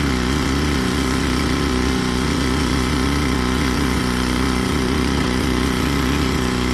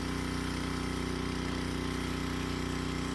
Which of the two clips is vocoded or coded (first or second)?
first